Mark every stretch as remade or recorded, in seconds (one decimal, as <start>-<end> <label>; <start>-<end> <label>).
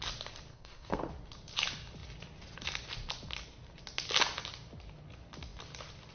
0.0-0.5 recorded; 0.5-1.1 remade; 1.1-6.1 recorded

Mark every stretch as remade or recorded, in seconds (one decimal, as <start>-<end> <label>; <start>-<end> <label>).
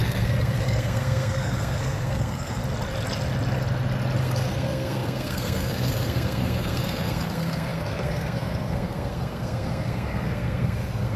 0.0-2.6 remade; 2.6-4.2 recorded; 4.2-11.2 remade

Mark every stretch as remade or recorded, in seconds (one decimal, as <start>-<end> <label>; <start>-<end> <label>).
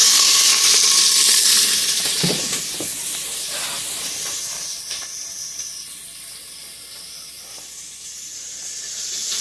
0.0-0.5 remade; 0.5-9.4 recorded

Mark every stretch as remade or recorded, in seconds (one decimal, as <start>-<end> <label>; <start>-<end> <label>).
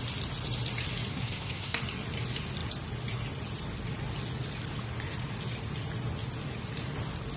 0.0-1.1 recorded; 1.1-1.8 remade; 1.8-7.4 recorded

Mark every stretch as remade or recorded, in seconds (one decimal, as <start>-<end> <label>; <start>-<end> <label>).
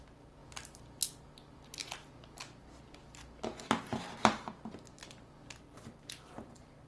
0.0-6.9 recorded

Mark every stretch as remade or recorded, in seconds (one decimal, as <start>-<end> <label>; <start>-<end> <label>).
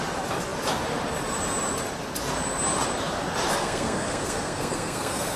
0.0-3.5 recorded; 3.5-5.4 remade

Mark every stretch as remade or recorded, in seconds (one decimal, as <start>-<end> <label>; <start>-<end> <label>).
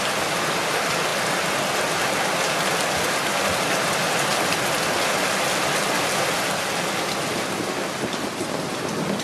0.0-9.2 recorded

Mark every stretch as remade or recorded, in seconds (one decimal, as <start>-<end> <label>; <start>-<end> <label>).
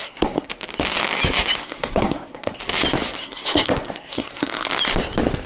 0.0-0.5 remade; 0.5-1.6 recorded; 1.6-2.6 remade; 2.6-3.2 recorded; 3.2-4.7 remade; 4.7-5.5 recorded